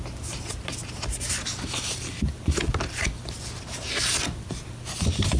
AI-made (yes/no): no